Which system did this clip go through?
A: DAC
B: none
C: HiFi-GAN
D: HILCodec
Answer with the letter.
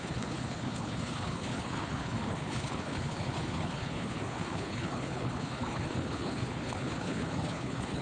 D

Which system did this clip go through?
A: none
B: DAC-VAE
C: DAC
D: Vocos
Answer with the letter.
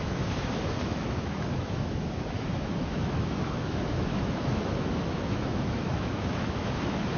B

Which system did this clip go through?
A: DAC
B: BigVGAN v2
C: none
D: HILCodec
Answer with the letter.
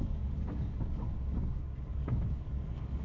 A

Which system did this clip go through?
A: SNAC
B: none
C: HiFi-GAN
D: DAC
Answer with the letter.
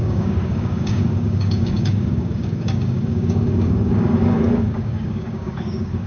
D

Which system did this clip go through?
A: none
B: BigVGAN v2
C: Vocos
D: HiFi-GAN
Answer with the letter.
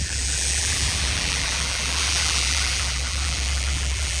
B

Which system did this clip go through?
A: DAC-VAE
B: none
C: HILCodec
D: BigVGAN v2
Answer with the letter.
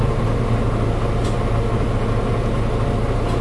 B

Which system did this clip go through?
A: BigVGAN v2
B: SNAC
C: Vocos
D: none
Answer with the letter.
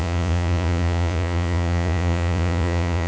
C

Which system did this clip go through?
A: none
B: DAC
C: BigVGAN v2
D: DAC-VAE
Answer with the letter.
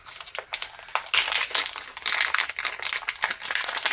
A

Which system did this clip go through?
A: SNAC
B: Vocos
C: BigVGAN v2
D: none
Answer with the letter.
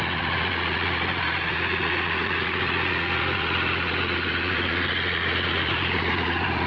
B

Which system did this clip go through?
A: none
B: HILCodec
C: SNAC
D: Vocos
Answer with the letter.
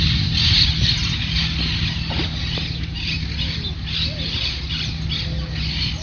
A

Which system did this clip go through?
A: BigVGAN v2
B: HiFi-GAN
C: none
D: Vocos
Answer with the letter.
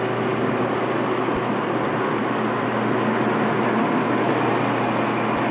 C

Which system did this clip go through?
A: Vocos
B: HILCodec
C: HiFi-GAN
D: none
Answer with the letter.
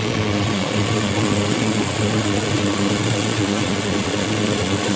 A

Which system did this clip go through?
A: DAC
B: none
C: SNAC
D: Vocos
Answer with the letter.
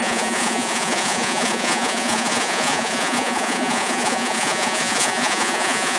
D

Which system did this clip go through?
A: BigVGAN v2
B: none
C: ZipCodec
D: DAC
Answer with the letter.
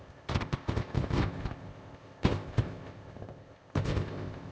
C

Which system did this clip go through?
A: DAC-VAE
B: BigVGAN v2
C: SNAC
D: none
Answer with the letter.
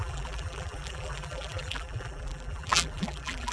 B